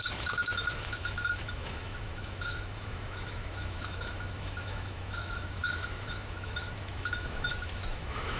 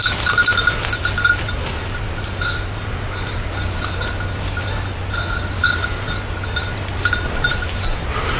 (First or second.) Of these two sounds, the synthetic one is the first